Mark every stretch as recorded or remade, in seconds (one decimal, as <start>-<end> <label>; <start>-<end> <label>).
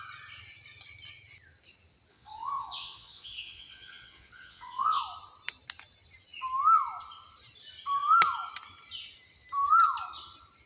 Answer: 0.0-2.1 recorded; 2.1-5.0 remade; 5.0-10.7 recorded